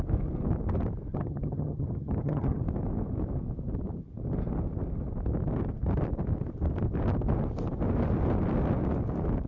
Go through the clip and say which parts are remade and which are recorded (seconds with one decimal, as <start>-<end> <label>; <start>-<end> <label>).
0.0-1.1 recorded; 1.1-2.6 remade; 2.6-9.5 recorded